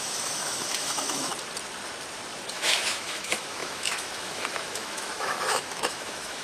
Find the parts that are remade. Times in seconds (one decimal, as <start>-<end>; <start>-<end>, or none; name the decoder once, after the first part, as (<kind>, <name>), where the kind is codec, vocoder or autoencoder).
0.0-1.3 (autoencoder, DAC-VAE); 2.5-6.4